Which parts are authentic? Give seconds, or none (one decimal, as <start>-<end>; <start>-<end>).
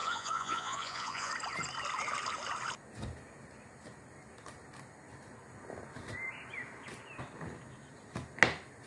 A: 1.3-8.9